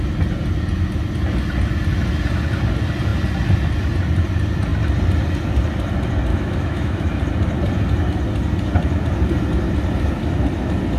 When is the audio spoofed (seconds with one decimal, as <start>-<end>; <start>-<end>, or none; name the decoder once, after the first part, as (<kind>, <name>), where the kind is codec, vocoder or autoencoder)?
6.3-7.2 (autoencoder, DAC-VAE)